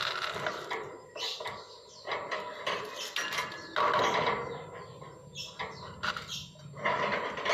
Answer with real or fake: real